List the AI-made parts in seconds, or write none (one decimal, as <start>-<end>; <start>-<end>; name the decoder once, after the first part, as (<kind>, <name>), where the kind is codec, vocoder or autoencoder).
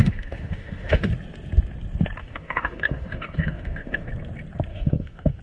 0.0-1.1 (autoencoder, DAC-VAE); 2.2-4.1; 4.7-5.4